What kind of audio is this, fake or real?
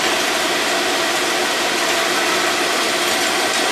real